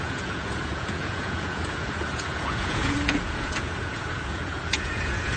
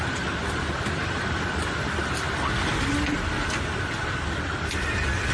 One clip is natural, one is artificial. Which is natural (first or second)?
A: second